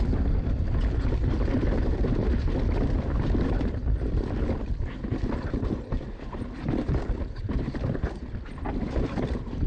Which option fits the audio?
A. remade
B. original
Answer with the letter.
A